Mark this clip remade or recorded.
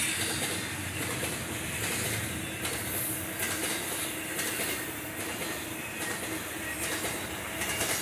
recorded